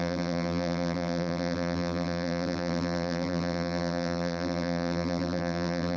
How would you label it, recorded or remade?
remade